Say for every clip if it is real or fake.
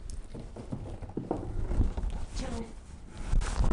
real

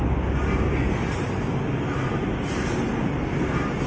real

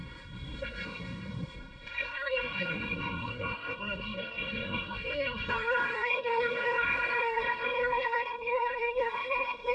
fake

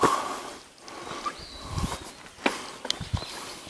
real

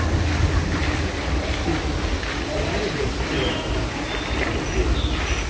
real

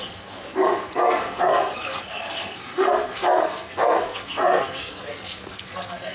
fake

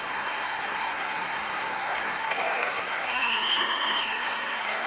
fake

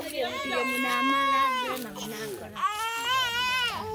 real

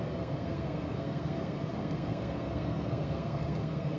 fake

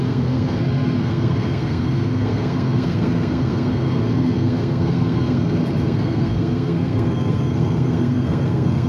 fake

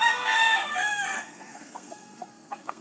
fake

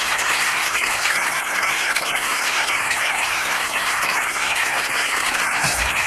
fake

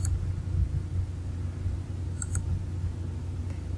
real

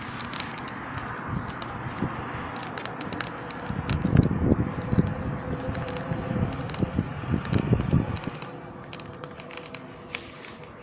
real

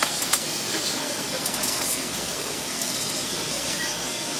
fake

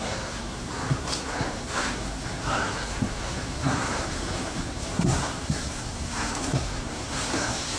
fake